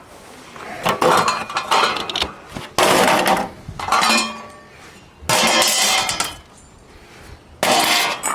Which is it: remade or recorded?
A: recorded